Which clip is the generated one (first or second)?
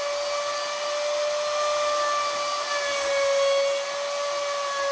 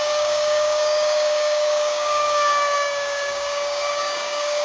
second